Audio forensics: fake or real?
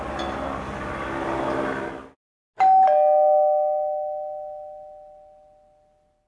real